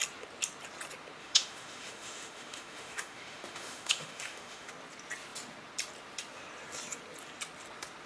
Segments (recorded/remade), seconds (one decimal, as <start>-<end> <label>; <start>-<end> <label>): 0.0-1.2 recorded; 1.2-4.7 remade; 4.7-8.1 recorded